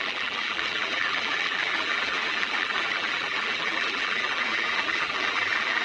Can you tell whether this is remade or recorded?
remade